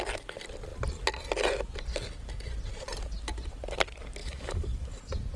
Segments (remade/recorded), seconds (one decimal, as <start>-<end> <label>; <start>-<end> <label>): 0.0-4.2 recorded; 4.2-4.9 remade; 4.9-5.4 recorded